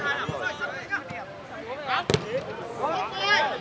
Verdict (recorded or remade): recorded